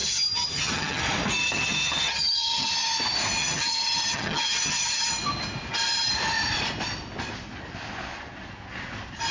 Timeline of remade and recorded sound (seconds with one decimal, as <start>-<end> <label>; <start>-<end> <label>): 0.0-1.0 remade; 1.0-1.4 recorded; 1.4-2.7 remade; 2.7-3.4 recorded; 3.4-5.1 remade; 5.1-9.3 recorded